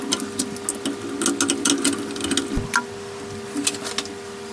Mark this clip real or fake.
real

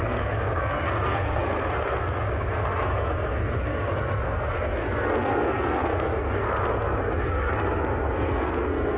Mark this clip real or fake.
fake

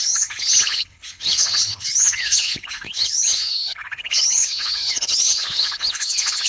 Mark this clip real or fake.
fake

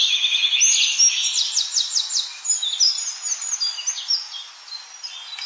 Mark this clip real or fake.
real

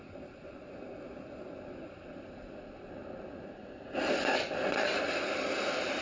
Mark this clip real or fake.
real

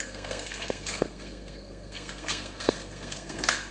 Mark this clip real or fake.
fake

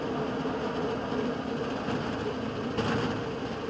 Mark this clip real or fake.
real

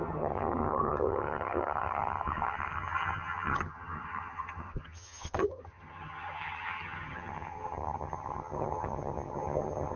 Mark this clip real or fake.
fake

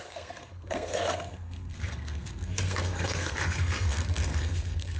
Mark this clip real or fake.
fake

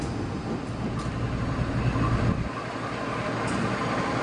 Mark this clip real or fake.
real